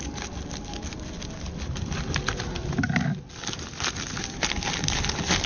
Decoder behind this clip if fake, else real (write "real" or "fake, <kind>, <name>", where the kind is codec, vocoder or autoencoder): real